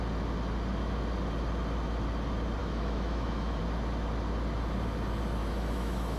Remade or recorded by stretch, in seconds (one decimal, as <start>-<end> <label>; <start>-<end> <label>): 0.0-2.6 recorded; 2.6-3.6 remade; 3.6-5.4 recorded; 5.4-6.2 remade